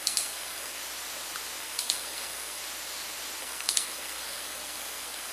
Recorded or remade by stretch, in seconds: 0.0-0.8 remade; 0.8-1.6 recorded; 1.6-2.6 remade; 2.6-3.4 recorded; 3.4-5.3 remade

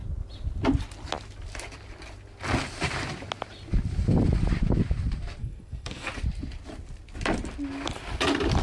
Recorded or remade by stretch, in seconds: 0.0-5.4 recorded; 5.4-6.1 remade; 6.1-8.6 recorded

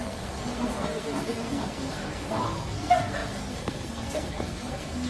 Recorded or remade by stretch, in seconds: 0.0-5.1 remade

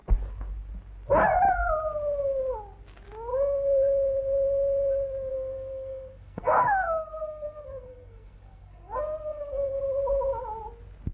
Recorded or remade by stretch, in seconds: 0.0-5.3 recorded; 5.3-9.8 remade; 9.8-11.1 recorded